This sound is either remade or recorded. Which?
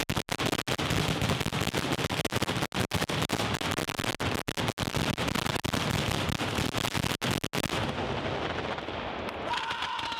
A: recorded